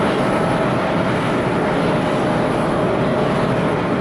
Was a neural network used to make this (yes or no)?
no